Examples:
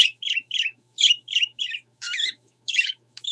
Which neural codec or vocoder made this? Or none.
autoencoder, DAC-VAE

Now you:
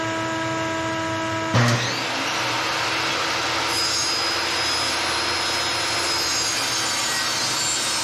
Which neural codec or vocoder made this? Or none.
none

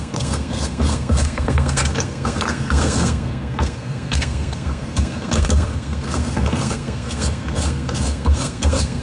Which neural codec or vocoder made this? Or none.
codec, SNAC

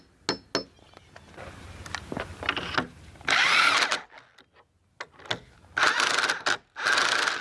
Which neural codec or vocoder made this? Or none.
none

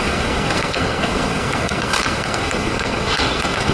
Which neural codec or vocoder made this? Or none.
codec, SNAC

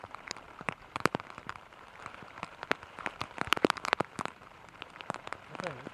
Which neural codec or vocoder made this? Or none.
vocoder, BigVGAN v2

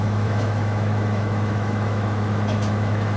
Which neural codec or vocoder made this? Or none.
autoencoder, DAC-VAE